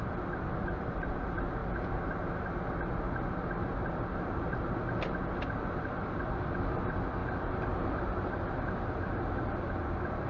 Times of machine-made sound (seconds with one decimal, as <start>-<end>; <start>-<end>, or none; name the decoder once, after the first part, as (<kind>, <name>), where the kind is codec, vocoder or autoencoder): 0.0-1.6 (vocoder, BigVGAN v2); 4.2-4.8; 5.5-7.2; 9.7-10.3